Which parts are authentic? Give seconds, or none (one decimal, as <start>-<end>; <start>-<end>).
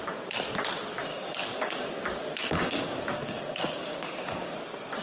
0.0-1.1; 1.9-2.4; 4.5-5.0